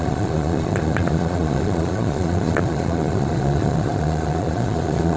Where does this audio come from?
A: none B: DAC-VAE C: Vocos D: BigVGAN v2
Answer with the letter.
C